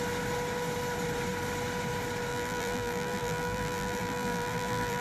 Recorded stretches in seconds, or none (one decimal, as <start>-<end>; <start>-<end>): 0.0-2.3